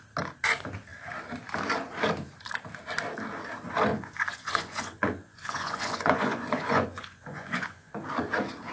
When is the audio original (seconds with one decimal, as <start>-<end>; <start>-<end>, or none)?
0.0-3.9; 7.9-8.7